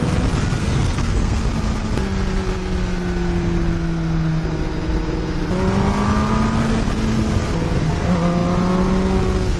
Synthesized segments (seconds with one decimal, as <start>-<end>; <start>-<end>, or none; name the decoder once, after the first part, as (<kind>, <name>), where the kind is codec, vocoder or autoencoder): 0.6-1.4 (codec, SNAC)